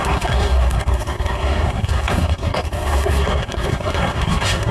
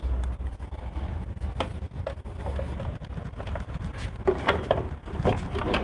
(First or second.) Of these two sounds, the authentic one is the second